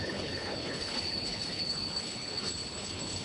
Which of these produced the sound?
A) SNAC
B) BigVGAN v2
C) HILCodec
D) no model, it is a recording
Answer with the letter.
C